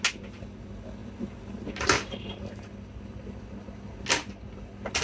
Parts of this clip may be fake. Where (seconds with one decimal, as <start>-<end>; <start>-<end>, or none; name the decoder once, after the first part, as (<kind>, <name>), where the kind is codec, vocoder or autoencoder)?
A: none